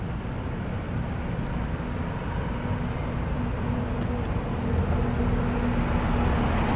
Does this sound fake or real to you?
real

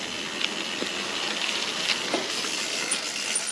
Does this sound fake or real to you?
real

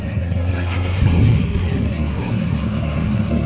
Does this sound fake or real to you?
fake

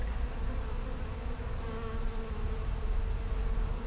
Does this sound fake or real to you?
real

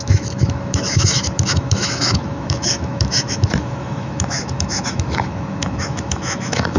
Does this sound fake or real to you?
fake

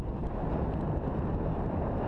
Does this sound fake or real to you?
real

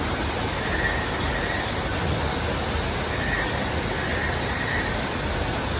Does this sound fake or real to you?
real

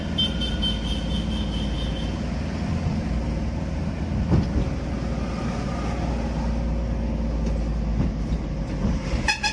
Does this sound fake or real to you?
real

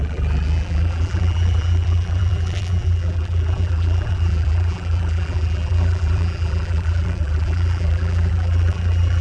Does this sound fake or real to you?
fake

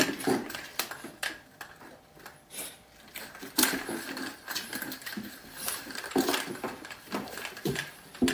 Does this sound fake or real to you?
fake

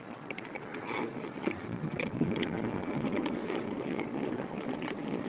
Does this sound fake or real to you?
fake